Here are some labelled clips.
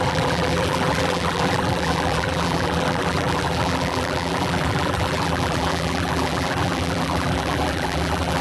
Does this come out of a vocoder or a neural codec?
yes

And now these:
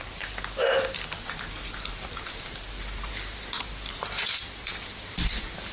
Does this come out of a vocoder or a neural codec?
yes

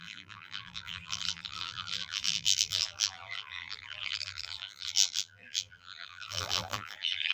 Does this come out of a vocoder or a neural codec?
yes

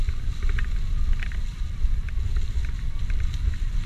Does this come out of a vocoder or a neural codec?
no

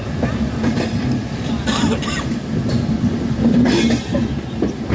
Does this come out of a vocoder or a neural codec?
yes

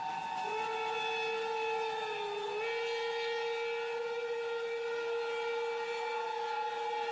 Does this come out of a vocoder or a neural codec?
no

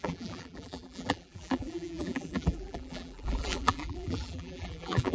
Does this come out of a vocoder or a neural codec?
yes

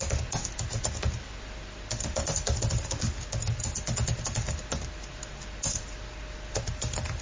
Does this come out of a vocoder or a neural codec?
no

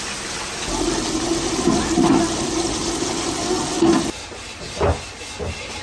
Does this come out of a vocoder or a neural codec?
no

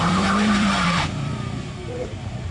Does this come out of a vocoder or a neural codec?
yes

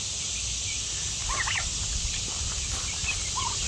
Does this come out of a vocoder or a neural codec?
no